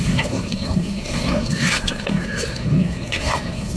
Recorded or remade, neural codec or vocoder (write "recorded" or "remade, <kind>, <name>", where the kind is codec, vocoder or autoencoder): remade, codec, SNAC